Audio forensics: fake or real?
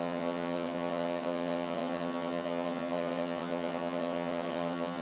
fake